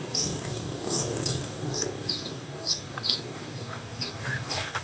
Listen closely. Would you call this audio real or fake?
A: fake